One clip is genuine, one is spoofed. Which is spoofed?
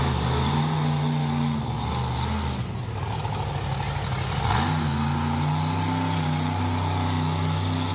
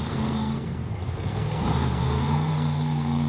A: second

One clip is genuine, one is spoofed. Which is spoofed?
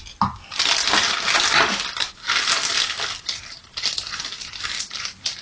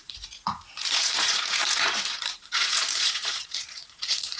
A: second